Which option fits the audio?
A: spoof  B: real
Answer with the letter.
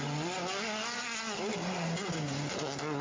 B